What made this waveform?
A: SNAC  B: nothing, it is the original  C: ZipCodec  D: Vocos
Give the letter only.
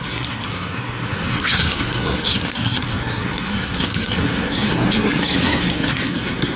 A